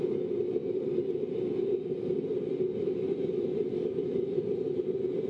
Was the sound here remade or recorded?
recorded